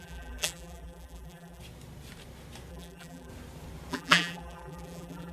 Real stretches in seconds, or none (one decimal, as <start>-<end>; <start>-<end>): 1.6-2.7; 3.3-3.9